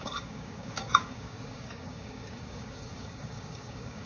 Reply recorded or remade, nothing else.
remade